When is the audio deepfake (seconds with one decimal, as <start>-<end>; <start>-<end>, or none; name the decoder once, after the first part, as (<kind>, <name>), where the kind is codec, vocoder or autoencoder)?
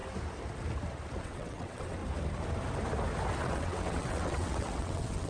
1.2-2.0 (vocoder, WaveNeXt); 3.4-5.3